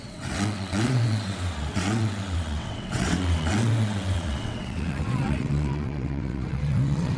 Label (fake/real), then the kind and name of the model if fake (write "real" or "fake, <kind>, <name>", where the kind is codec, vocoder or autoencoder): fake, vocoder, WaveNeXt